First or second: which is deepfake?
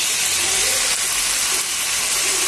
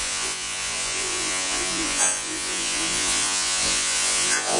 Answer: second